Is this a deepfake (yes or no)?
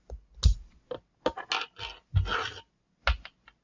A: no